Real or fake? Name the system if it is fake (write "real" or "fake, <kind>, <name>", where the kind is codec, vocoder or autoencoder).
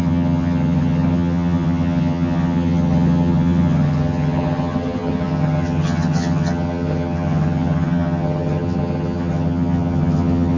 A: fake, vocoder, HiFi-GAN